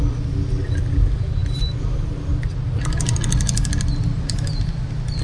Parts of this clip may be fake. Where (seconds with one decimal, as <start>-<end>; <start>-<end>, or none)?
none